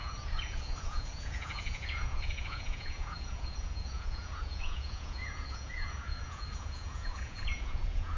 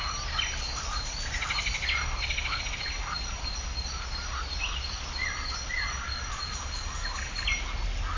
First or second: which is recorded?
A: second